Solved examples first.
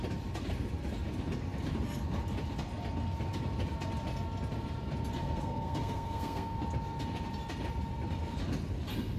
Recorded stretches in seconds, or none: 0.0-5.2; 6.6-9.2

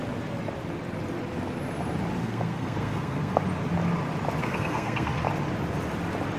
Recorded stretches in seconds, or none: 0.0-2.2; 3.4-4.4; 5.2-6.4

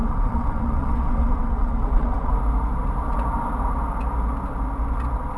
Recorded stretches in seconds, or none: 2.3-5.4